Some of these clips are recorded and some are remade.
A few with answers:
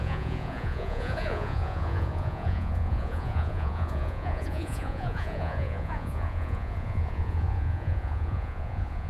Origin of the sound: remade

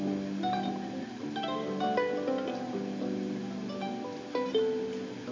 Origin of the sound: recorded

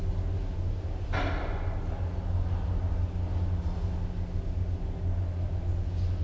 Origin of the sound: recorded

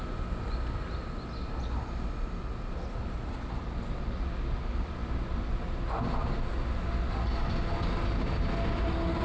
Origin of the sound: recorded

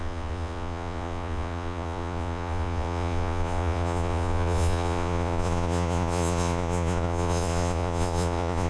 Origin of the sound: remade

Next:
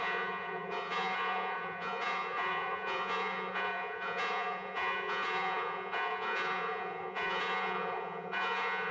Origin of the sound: remade